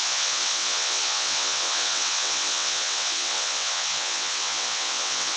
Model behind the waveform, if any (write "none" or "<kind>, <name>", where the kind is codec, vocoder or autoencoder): vocoder, WaveNeXt